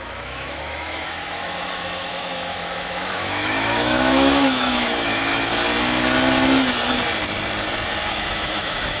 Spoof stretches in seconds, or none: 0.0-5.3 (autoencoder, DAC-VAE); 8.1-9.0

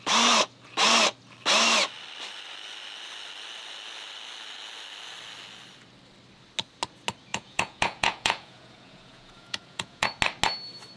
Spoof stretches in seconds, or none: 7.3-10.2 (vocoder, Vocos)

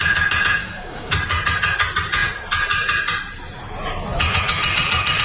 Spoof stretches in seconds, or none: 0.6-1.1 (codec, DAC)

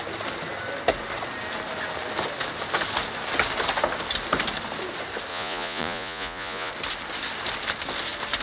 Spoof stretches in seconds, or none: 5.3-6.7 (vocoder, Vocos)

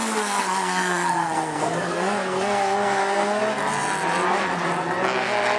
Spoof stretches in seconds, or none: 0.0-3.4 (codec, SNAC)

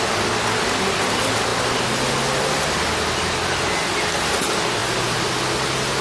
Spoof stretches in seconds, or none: none

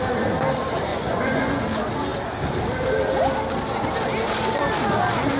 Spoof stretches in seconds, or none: 0.9-1.6 (vocoder, Vocos)